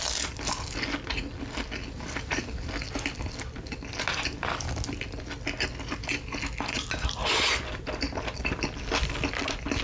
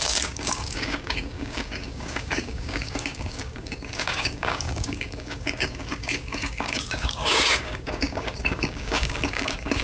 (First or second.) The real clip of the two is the first